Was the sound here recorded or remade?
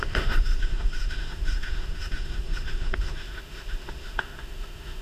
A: remade